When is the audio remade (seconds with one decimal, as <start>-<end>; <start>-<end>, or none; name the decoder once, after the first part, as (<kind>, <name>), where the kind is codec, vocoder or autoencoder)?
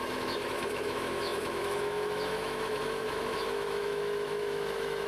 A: 0.0-5.1 (autoencoder, DAC-VAE)